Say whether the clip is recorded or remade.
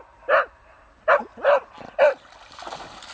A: recorded